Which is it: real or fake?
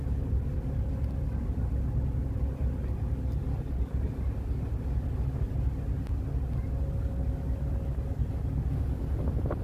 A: real